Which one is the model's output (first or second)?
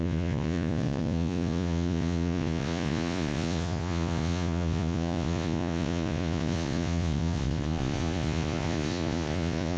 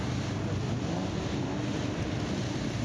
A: first